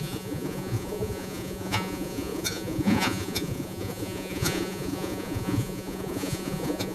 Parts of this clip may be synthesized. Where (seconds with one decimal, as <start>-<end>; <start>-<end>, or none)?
0.0-6.9